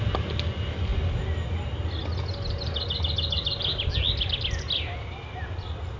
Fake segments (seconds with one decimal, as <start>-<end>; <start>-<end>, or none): none